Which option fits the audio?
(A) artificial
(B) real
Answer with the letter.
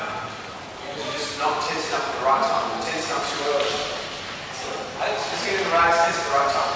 B